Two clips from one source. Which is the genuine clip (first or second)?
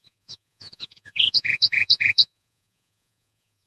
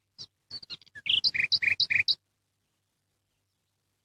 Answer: second